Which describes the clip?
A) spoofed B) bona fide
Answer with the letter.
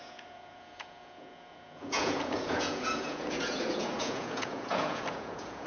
A